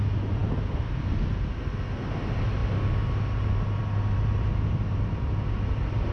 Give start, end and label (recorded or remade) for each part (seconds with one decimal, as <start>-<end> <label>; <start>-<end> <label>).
0.0-6.1 recorded